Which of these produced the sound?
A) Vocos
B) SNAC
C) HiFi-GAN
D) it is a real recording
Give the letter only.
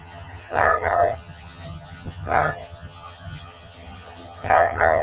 C